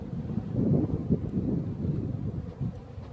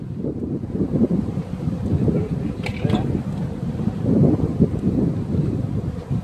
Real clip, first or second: first